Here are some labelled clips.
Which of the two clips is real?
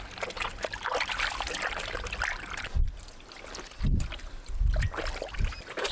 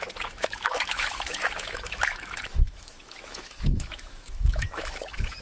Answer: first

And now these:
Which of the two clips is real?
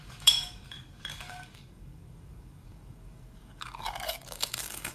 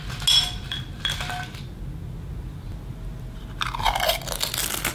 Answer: second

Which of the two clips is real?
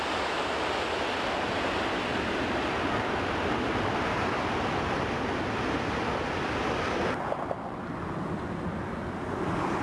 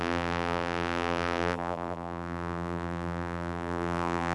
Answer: first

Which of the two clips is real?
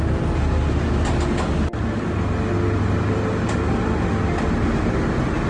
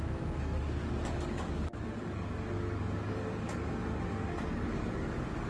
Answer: first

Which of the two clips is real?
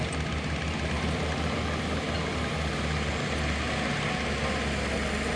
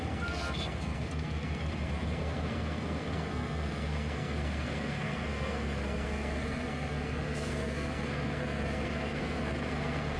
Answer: first